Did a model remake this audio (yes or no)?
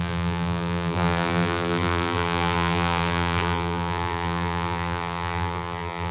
yes